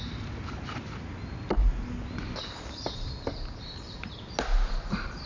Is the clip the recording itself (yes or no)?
yes